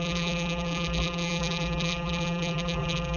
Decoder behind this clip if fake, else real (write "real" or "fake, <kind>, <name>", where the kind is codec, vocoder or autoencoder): fake, vocoder, BigVGAN v2